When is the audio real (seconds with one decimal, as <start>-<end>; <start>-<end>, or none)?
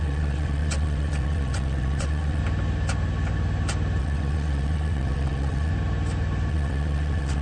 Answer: 2.4-4.0; 5.7-6.5